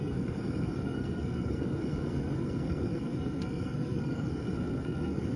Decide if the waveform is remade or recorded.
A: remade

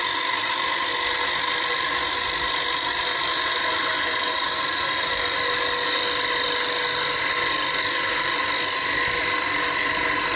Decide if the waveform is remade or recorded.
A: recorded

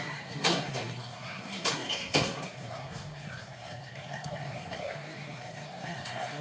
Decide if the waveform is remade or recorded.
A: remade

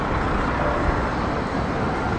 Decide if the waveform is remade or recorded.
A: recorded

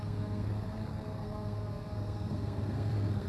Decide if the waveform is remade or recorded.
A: remade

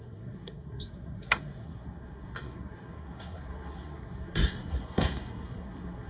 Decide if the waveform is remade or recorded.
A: remade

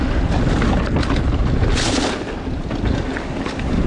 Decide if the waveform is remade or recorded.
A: recorded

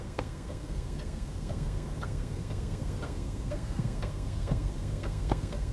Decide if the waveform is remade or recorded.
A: remade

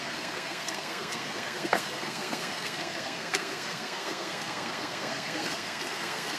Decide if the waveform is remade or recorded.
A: remade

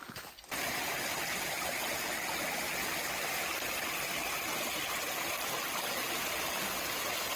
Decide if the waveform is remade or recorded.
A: recorded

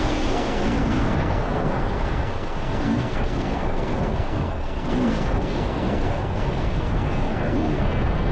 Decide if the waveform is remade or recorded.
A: remade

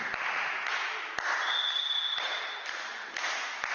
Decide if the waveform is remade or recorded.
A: recorded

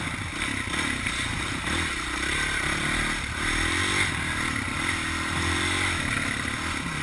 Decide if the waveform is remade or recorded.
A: recorded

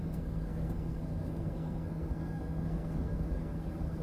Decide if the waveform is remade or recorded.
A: remade